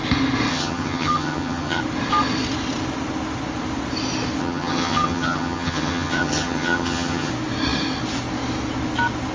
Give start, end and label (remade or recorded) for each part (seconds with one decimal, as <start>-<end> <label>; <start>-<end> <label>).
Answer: 0.0-0.5 recorded; 0.5-1.8 remade; 1.8-4.4 recorded; 4.4-7.3 remade; 7.3-9.3 recorded

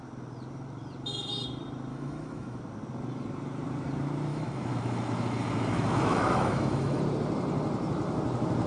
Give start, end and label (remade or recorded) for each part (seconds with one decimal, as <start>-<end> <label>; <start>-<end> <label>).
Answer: 0.0-1.9 recorded; 1.9-2.6 remade; 2.6-4.3 recorded; 4.3-7.0 remade; 7.0-8.7 recorded

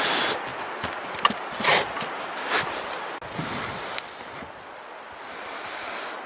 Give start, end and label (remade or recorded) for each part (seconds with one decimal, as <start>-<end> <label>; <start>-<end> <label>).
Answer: 0.0-6.3 recorded

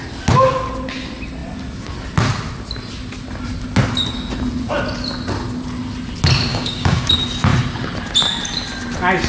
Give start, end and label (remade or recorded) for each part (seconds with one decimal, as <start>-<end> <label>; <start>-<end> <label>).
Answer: 0.0-6.5 recorded; 6.5-7.1 remade; 7.1-9.3 recorded

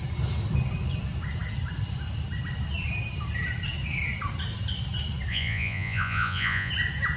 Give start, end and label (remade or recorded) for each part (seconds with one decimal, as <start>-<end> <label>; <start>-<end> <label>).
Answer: 0.0-5.3 recorded; 5.3-6.7 remade; 6.7-7.2 recorded